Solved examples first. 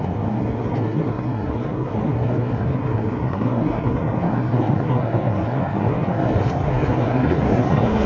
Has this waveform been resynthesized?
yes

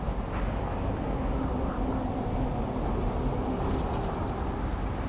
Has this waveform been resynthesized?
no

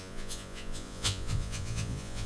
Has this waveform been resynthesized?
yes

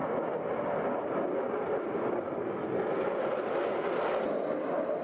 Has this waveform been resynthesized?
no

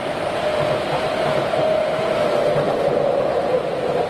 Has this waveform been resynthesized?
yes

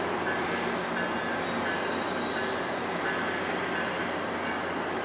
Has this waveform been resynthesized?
no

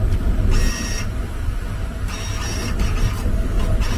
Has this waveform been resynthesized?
no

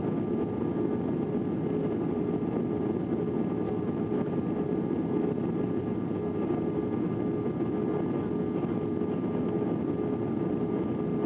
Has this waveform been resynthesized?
no